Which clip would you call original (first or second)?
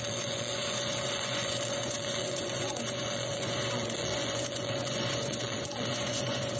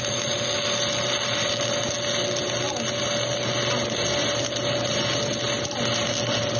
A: second